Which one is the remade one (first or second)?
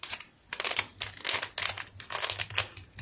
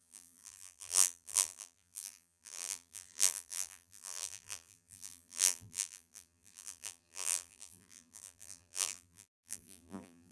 second